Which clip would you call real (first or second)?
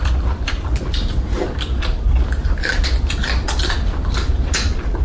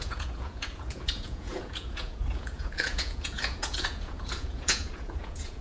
first